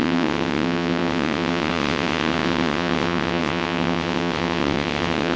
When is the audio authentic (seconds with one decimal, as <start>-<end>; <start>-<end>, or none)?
none

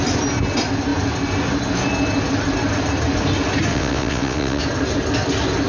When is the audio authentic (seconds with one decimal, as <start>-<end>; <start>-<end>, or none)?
0.0-3.7; 4.6-5.7

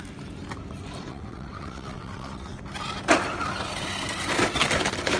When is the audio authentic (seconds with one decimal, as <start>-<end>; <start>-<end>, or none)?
0.0-1.1; 2.6-5.2

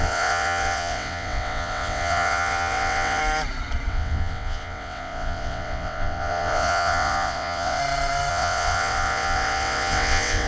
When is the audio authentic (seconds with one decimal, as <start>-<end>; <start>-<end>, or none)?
3.2-3.9; 7.8-8.3

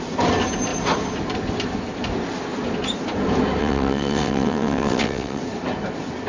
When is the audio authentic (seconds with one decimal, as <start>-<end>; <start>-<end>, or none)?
0.0-3.6; 5.4-6.3

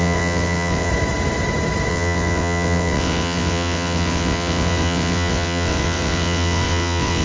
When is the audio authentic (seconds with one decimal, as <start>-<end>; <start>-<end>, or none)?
0.9-1.9

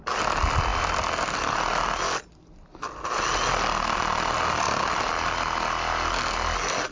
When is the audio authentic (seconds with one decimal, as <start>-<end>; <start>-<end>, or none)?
0.0-6.9

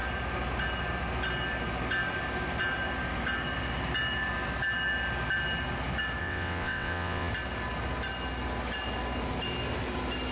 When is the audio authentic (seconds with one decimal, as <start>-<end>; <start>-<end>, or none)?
0.0-6.2; 7.3-10.3